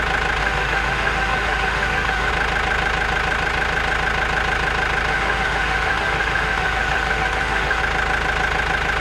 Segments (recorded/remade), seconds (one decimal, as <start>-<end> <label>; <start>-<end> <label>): 0.0-0.4 recorded; 0.4-2.3 remade; 2.3-5.1 recorded; 5.1-7.8 remade; 7.8-9.0 recorded